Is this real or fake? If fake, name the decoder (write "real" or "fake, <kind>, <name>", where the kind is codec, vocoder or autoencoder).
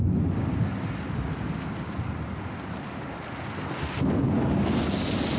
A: real